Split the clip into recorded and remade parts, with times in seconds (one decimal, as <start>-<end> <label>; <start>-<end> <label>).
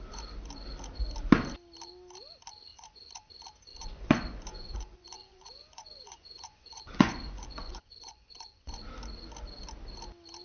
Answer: 0.0-2.7 recorded; 2.7-3.3 remade; 3.3-3.7 recorded; 3.7-8.8 remade; 8.8-10.4 recorded